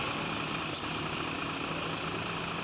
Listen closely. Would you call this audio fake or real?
real